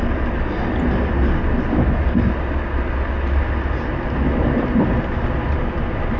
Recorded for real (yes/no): yes